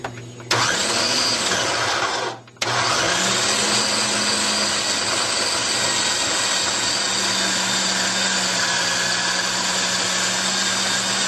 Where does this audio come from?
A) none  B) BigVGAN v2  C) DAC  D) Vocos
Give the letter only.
A